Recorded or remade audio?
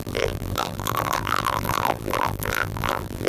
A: remade